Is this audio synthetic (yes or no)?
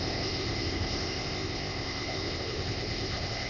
yes